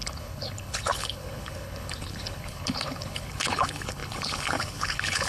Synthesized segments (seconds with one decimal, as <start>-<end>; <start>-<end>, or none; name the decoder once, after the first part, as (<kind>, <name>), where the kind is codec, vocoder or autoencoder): 0.0-5.3 (codec, HILCodec)